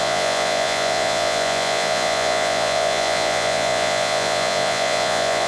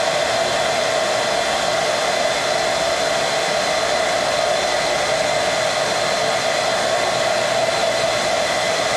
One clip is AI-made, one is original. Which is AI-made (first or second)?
first